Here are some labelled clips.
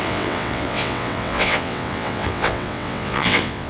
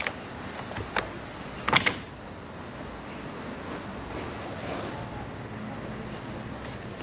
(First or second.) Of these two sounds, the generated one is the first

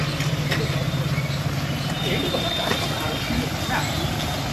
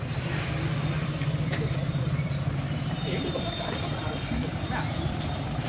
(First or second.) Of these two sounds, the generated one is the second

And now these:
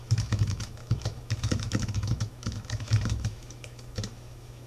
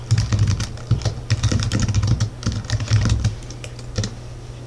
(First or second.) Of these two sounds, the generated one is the first